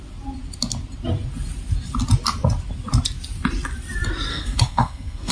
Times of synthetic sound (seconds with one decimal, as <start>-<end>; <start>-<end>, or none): 4.3-5.3